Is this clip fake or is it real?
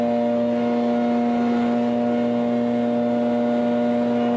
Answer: real